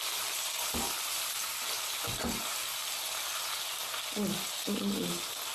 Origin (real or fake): real